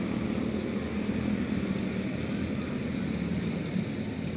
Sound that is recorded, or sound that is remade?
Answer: recorded